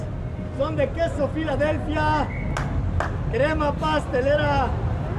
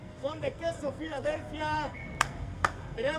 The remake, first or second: second